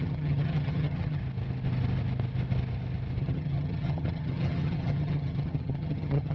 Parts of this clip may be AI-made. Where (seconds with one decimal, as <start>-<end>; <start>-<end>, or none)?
0.0-1.2; 3.2-6.3